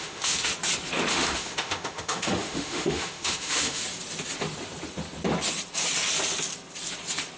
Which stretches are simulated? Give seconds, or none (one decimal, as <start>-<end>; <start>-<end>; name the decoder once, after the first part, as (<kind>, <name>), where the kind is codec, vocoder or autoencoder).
0.0-0.5 (autoencoder, DAC-VAE); 1.1-3.8